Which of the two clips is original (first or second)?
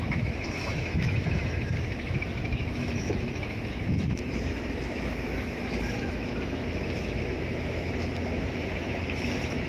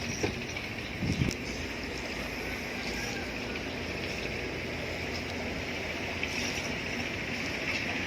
second